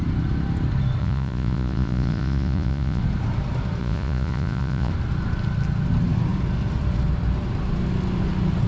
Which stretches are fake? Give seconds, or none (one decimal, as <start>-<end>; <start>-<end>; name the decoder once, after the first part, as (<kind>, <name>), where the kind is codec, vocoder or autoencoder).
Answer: 1.0-3.0 (vocoder, Vocos); 3.8-4.9